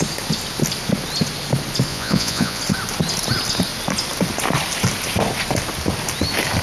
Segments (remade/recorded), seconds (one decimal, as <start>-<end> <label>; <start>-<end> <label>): 0.0-1.9 recorded; 1.9-2.6 remade; 2.6-6.6 recorded